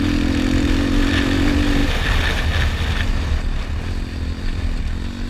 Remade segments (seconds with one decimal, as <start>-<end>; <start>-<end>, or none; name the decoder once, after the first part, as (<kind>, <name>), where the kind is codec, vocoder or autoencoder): none